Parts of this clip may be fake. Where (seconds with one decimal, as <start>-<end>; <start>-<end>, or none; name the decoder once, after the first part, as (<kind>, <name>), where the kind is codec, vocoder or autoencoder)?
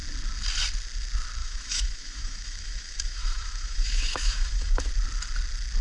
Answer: 1.4-4.9 (autoencoder, DAC-VAE)